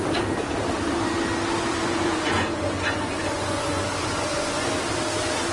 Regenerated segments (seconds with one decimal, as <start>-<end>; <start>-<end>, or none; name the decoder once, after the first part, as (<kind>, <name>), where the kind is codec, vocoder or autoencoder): 1.8-4.7 (vocoder, Vocos)